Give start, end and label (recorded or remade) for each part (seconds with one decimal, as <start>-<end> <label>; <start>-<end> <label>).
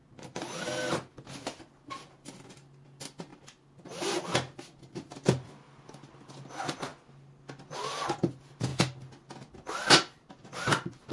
0.0-11.1 recorded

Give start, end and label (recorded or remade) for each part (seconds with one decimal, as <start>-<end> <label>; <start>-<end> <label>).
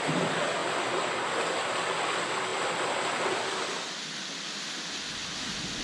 0.0-5.8 recorded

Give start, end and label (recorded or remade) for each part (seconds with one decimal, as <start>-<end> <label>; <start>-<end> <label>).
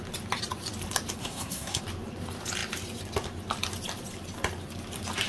0.0-1.2 recorded; 1.2-1.8 remade; 1.8-5.3 recorded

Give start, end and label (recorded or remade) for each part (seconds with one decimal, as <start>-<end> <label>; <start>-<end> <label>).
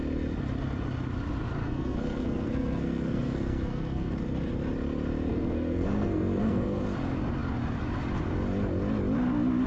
0.0-1.6 recorded; 1.6-4.1 remade; 4.1-5.3 recorded; 5.3-6.8 remade; 6.8-9.7 recorded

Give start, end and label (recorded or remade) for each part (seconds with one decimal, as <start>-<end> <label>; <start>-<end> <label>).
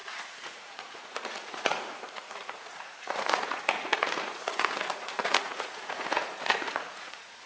0.0-7.5 remade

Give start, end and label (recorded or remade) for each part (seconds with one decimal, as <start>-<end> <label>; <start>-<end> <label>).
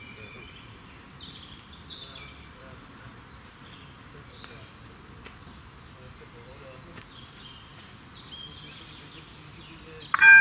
0.0-10.4 recorded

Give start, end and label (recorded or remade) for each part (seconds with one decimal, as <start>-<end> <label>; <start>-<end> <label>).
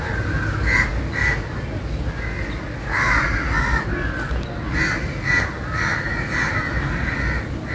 0.0-7.7 recorded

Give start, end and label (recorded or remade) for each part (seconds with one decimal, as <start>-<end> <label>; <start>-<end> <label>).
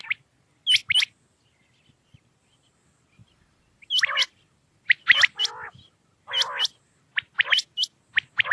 0.0-2.2 recorded; 2.2-8.5 remade